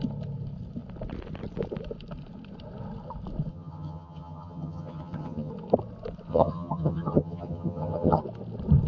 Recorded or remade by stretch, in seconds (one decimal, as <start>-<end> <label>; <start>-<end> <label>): 0.0-3.5 recorded; 3.5-5.5 remade; 5.5-6.3 recorded; 6.3-8.2 remade; 8.2-8.9 recorded